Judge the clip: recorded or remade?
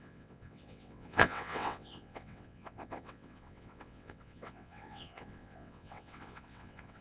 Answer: remade